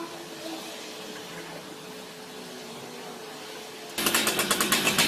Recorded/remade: recorded